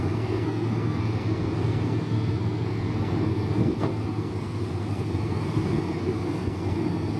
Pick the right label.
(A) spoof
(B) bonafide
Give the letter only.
A